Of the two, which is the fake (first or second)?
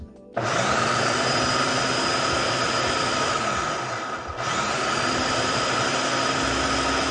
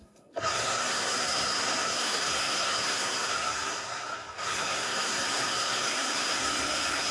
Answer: second